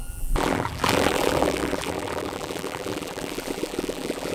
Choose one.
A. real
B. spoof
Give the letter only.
B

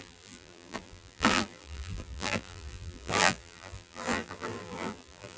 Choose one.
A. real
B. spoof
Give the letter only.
B